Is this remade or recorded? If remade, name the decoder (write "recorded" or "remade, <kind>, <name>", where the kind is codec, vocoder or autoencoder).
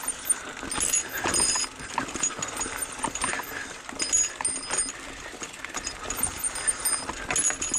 recorded